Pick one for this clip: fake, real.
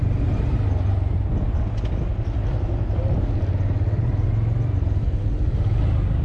real